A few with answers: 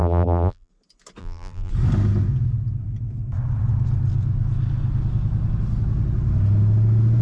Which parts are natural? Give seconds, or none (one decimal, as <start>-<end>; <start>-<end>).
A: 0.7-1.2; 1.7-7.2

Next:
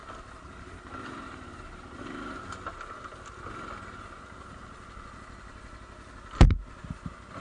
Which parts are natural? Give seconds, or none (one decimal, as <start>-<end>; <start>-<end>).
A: 0.0-7.4

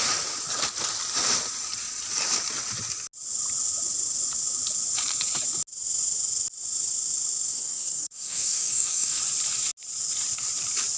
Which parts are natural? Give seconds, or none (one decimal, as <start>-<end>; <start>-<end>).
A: 0.0-7.5; 9.2-11.0

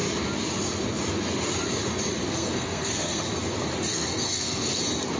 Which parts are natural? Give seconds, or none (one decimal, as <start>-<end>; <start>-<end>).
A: 0.0-2.3; 3.2-3.9; 4.8-5.2